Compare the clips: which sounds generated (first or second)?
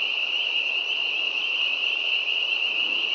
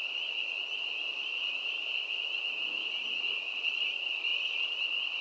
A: first